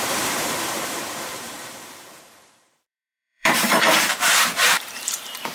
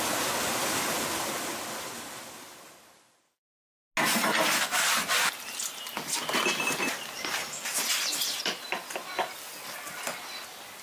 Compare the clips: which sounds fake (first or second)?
first